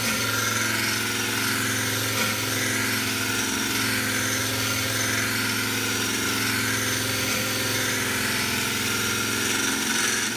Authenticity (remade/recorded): recorded